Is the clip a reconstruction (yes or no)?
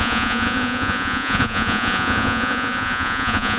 yes